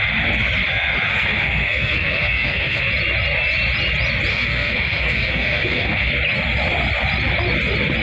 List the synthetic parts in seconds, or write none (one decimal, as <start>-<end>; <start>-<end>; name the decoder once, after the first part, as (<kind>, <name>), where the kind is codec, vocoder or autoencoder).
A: 1.1-2.9 (codec, SNAC); 4.3-6.1